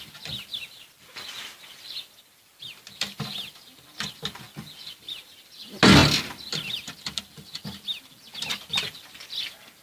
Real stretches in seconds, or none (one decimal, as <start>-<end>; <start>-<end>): 0.0-9.8